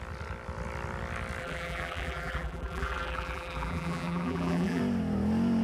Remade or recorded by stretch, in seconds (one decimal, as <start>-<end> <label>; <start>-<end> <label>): 0.0-1.4 recorded; 1.4-4.8 remade; 4.8-5.6 recorded